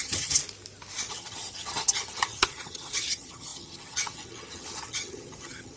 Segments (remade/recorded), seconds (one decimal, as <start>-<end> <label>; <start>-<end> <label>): 0.0-0.4 remade; 0.4-1.1 recorded; 1.1-5.8 remade